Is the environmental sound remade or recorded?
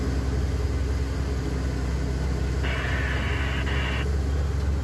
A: recorded